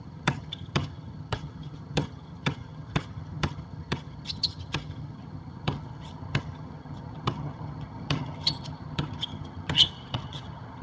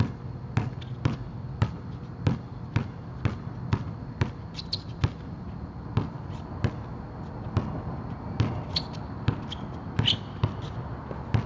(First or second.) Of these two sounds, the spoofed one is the first